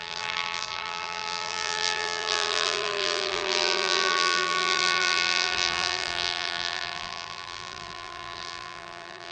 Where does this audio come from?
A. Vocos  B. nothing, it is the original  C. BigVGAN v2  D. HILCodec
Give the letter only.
C